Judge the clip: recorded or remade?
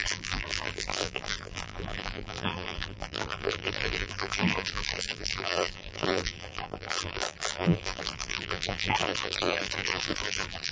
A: remade